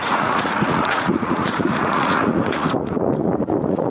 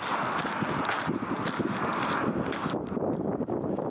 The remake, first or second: first